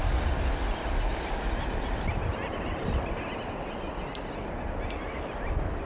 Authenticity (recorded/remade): recorded